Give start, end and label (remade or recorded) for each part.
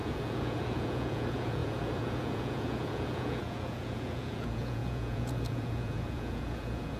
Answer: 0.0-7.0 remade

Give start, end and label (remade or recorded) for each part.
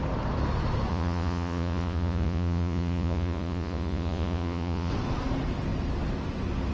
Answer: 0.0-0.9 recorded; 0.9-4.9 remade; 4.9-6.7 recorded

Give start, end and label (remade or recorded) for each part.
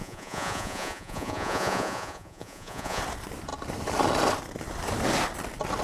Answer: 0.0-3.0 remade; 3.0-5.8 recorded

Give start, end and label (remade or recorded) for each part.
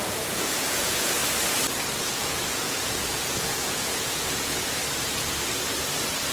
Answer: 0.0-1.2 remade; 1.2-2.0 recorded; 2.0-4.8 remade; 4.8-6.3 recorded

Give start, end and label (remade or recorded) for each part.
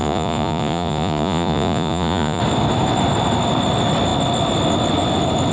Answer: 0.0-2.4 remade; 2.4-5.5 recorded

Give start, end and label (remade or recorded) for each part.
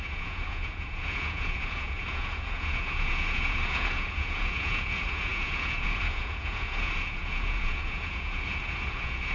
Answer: 0.0-9.3 remade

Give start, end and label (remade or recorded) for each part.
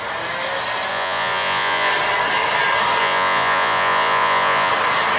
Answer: 0.0-0.9 recorded; 0.9-1.9 remade; 1.9-3.0 recorded; 3.0-4.7 remade; 4.7-5.2 recorded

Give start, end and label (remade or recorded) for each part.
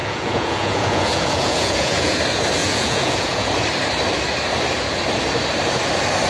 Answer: 0.0-2.2 remade; 2.2-2.6 recorded; 2.6-3.5 remade; 3.5-6.3 recorded